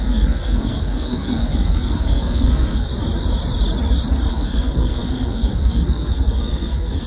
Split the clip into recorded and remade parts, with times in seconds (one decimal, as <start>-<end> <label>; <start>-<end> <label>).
0.0-2.9 remade; 2.9-4.3 recorded; 4.3-7.1 remade

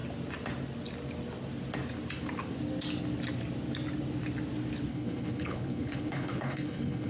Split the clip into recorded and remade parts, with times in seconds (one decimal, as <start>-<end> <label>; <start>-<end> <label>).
0.0-4.9 recorded; 4.9-7.1 remade

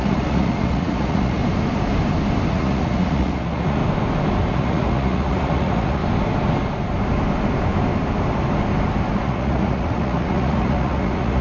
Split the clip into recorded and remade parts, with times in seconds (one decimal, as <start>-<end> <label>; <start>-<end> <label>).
0.0-1.4 remade; 1.4-2.5 recorded; 2.5-3.8 remade; 3.8-4.5 recorded; 4.5-6.0 remade; 6.0-9.2 recorded; 9.2-11.4 remade

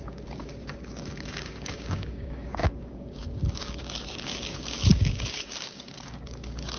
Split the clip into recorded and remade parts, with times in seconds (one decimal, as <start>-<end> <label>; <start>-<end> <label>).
0.0-6.8 remade

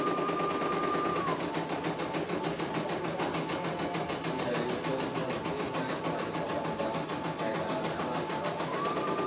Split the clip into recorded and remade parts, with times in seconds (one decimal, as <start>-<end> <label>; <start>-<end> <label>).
0.0-9.3 recorded

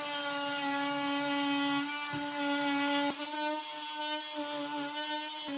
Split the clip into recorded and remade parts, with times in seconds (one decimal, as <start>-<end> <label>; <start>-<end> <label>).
0.0-5.6 recorded